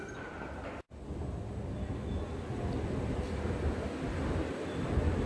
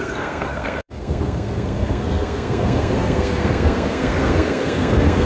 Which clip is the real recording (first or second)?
first